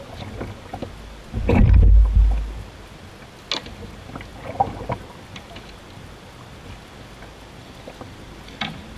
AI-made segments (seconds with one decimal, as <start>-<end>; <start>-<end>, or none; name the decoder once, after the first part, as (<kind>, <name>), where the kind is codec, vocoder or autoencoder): none